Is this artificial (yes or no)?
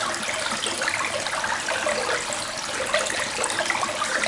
no